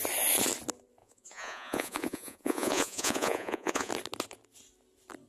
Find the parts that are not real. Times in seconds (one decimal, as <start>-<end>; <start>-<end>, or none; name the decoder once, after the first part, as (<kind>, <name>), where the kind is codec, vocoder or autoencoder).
1.0-3.9 (vocoder, Vocos)